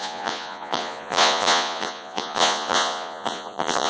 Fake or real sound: fake